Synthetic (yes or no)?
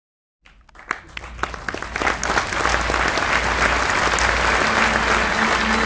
no